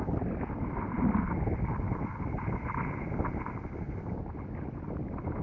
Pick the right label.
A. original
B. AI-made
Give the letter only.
A